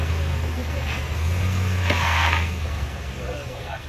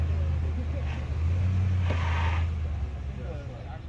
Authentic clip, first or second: second